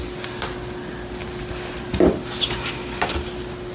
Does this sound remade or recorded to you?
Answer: recorded